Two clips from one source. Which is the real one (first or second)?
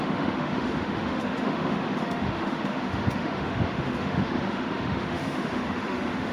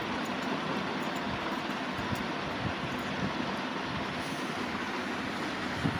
second